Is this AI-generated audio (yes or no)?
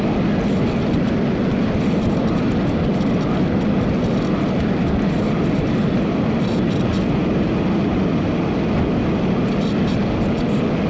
no